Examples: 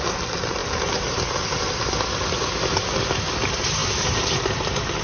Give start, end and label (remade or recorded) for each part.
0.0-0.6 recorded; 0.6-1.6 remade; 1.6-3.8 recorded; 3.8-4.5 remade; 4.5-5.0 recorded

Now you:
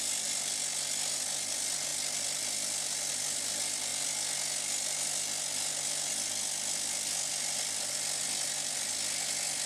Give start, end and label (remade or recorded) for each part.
0.0-9.7 recorded

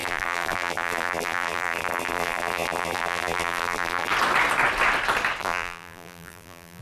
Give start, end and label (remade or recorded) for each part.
0.0-4.1 remade; 4.1-5.4 recorded; 5.4-6.8 remade